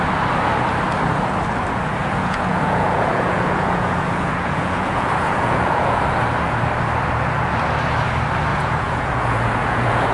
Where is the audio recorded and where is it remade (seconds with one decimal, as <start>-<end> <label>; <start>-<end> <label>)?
0.0-2.0 recorded; 2.0-6.0 remade; 6.0-8.5 recorded; 8.5-10.1 remade